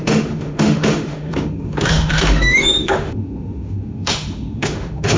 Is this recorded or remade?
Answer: remade